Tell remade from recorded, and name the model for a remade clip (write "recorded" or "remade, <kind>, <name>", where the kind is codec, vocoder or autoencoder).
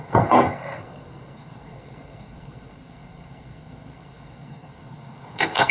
remade, codec, SNAC